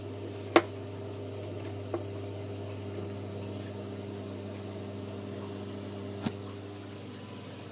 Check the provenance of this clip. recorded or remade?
recorded